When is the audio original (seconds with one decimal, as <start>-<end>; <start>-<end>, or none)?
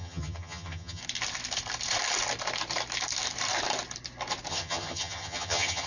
1.0-4.5